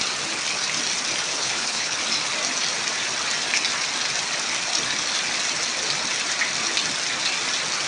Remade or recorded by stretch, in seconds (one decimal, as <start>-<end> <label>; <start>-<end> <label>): 0.0-1.3 recorded; 1.3-2.0 remade; 2.0-7.9 recorded